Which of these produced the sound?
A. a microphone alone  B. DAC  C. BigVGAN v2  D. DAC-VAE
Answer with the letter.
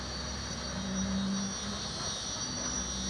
A